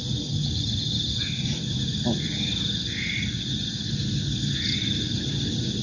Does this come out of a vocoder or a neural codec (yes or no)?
no